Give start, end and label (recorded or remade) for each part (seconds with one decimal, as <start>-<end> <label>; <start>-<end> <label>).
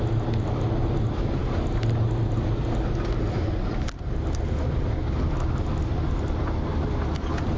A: 0.0-7.6 recorded